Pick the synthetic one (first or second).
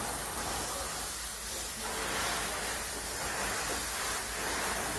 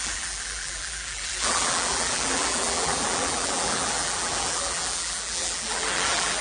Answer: second